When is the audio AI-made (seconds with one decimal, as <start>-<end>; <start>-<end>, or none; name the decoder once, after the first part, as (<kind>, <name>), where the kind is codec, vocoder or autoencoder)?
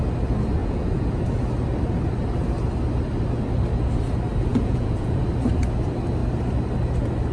0.6-1.1 (vocoder, Vocos); 4.5-5.2